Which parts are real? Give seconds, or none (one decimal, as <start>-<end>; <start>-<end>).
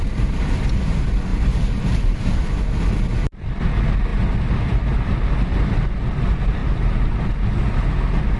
0.0-1.3; 2.6-6.6; 7.2-8.4